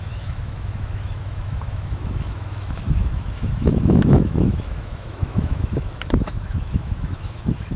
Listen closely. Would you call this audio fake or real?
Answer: fake